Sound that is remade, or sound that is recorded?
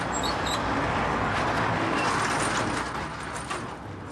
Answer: recorded